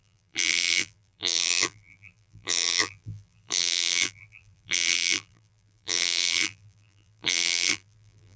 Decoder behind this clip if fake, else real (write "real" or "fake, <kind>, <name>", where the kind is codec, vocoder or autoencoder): fake, vocoder, BigVGAN v2